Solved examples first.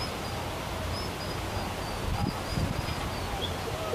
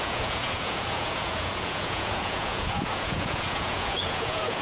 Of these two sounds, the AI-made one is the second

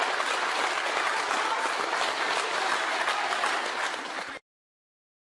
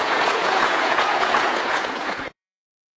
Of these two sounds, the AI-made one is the second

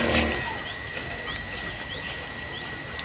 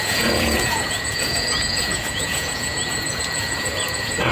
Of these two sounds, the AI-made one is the second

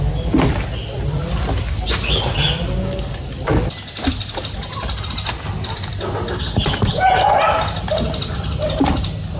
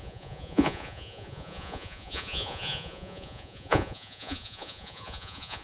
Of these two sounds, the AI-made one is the second